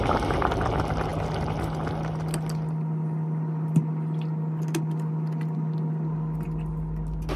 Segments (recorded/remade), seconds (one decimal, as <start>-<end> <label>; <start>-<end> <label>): 0.0-7.4 recorded